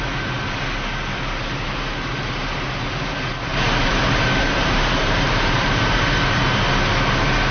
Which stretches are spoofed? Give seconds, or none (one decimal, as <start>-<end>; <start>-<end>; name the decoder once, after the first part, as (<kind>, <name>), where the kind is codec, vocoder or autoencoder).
3.5-6.0 (vocoder, BigVGAN v2)